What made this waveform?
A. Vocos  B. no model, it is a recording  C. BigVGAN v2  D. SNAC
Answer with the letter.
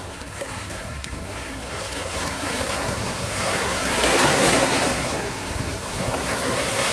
D